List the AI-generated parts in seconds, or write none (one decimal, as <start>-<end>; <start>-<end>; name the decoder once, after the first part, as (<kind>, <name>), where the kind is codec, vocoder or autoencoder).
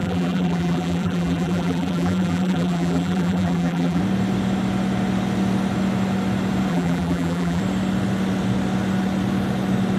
0.0-4.0 (vocoder, BigVGAN v2); 6.7-7.6